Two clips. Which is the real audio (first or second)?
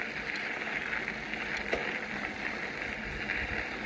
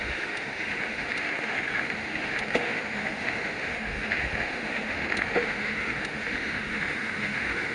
first